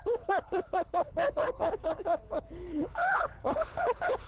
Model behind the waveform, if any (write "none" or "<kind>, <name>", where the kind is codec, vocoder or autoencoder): codec, HILCodec